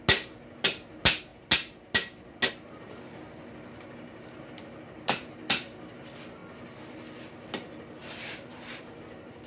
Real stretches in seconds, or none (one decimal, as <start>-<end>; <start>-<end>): 0.0-8.0; 9.0-9.5